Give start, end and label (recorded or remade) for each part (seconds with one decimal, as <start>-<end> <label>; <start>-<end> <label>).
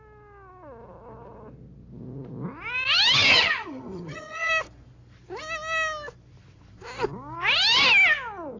0.0-3.3 recorded; 3.3-4.5 remade; 4.5-8.6 recorded